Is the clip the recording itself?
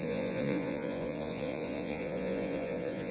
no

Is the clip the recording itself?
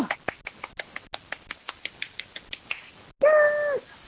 yes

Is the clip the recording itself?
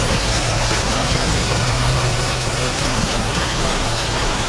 no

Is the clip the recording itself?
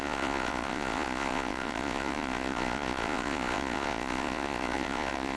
no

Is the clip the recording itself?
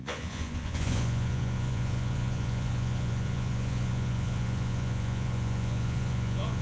no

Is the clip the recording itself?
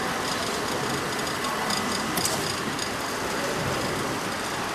yes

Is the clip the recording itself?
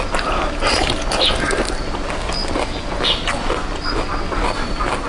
yes